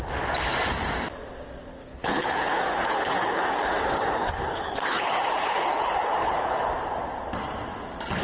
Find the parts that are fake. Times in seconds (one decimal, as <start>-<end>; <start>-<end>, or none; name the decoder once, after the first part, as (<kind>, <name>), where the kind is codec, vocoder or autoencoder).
1.8-6.7 (codec, HILCodec)